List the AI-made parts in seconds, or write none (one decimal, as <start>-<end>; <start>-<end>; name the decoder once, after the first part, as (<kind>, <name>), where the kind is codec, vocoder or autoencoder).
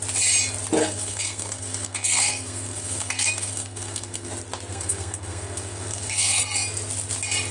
0.8-4.3 (codec, SNAC); 4.7-6.4